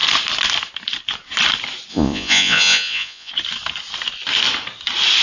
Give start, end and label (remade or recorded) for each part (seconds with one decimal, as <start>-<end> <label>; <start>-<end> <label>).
0.0-1.9 recorded; 1.9-3.3 remade; 3.3-5.2 recorded